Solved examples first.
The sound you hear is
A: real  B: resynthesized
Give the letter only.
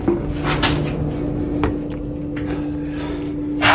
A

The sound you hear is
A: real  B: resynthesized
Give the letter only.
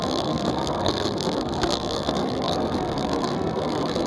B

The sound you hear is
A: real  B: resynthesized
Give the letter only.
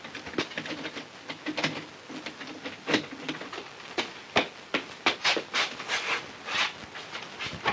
A